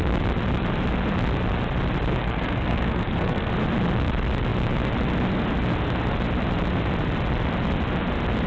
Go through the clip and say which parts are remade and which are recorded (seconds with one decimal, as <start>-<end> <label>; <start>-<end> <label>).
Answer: 0.0-2.2 recorded; 2.2-3.5 remade; 3.5-8.5 recorded